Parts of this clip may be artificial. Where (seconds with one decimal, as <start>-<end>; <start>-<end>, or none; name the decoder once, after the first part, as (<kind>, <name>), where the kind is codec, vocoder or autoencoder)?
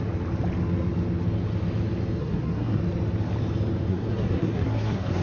2.2-2.8 (codec, SNAC); 3.9-5.2